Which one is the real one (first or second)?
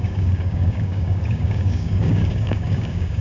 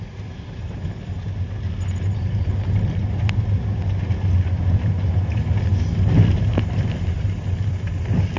second